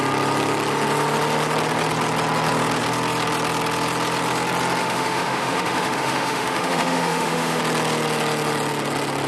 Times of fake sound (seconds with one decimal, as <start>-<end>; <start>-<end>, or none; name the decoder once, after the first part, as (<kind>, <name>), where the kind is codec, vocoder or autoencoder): 4.8-7.6 (autoencoder, DAC-VAE)